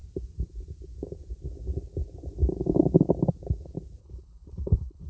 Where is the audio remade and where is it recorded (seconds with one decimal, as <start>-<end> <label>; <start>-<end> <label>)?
0.0-4.0 recorded; 4.0-5.1 remade